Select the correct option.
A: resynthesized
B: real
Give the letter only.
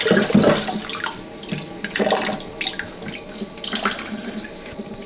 B